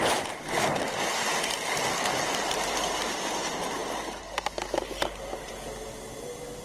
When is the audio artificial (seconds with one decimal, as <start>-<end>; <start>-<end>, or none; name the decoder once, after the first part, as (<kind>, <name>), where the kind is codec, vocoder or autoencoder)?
none